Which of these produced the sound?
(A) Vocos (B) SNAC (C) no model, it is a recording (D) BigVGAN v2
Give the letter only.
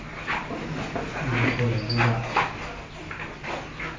C